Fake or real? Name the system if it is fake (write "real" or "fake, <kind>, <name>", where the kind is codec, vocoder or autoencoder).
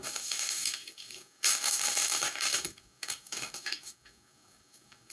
fake, codec, DAC